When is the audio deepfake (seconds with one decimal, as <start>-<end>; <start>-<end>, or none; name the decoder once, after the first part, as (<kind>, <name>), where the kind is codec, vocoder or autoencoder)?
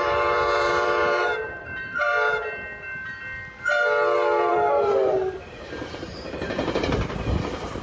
0.0-2.1 (vocoder, BigVGAN v2); 4.5-7.8